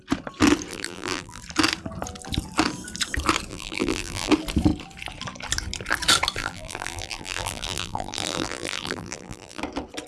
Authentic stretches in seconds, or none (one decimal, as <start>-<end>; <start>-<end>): 0.0-0.7; 1.4-3.5; 4.3-6.4; 9.6-10.1

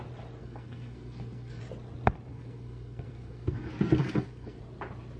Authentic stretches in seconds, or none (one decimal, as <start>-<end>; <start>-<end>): 0.0-0.4; 1.6-2.3; 4.6-5.2

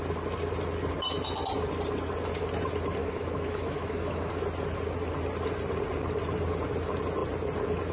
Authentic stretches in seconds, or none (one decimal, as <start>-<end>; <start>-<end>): 0.0-3.0; 4.3-7.9

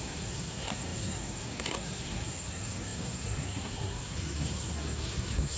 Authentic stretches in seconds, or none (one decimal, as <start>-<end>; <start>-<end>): none

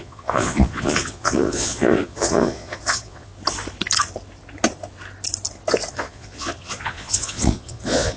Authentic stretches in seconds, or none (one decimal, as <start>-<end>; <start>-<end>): 3.3-5.9